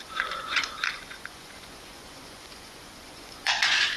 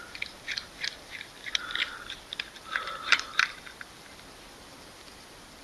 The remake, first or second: first